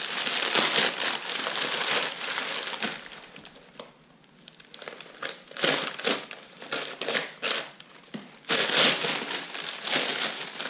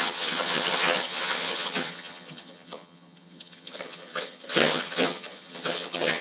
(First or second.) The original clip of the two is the first